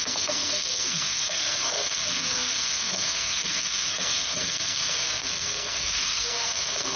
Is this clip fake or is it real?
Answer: fake